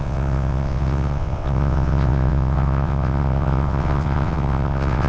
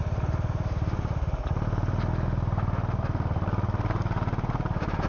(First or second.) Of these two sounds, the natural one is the second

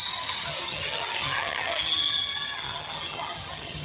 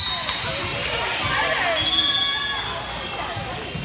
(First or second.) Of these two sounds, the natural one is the second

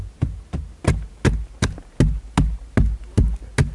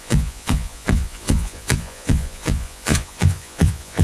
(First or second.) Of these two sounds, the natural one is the first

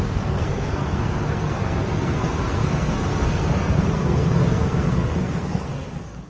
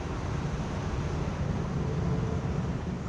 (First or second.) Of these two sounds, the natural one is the second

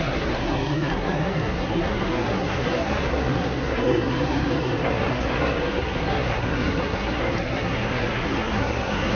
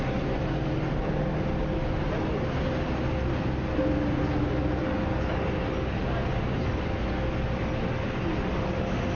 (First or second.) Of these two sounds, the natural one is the second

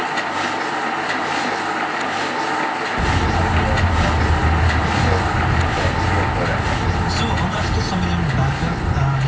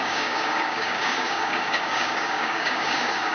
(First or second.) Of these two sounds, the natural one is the first